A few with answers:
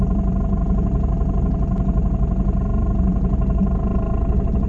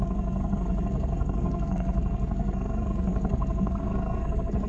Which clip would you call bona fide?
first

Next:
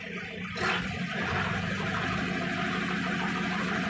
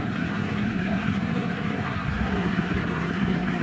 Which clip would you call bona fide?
first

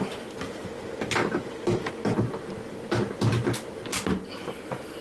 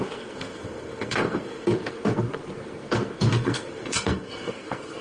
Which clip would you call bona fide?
first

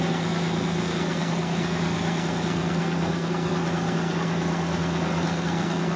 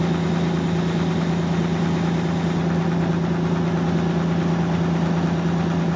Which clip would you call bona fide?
second